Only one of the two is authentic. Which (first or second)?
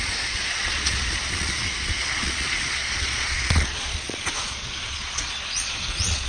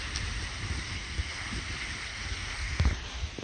second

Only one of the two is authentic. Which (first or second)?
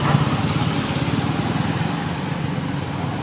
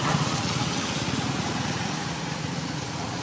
first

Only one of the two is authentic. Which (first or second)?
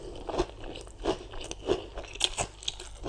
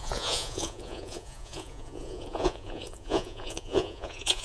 first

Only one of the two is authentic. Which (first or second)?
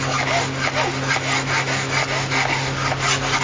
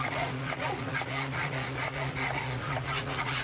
first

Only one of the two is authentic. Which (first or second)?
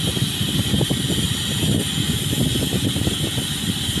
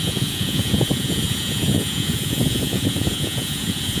first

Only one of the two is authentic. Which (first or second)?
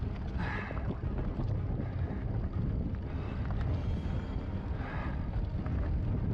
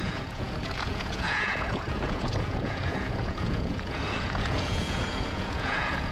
first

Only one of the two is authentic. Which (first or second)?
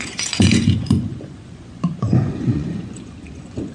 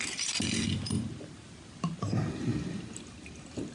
second